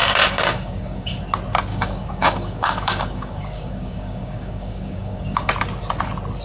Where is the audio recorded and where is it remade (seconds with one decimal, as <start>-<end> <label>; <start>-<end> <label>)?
0.0-1.2 remade; 1.2-1.7 recorded; 1.7-5.5 remade; 5.5-6.4 recorded